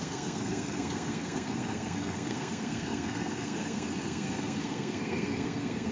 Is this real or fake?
fake